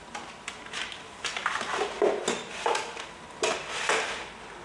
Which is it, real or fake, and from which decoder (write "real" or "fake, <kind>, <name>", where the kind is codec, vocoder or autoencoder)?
real